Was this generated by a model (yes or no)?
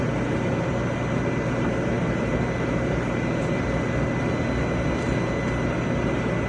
no